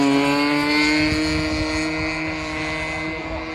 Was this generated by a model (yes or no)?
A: no